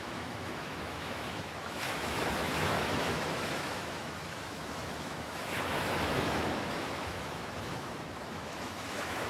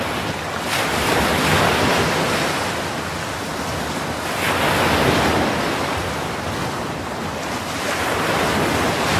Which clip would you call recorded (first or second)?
second